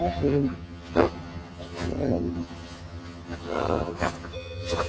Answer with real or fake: fake